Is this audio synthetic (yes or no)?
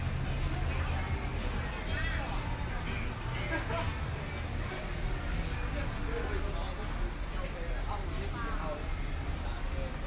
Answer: no